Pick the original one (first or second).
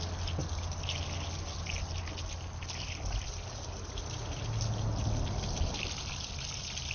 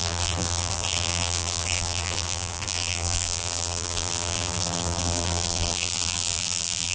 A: first